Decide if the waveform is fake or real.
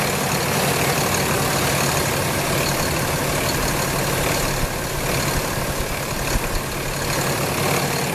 real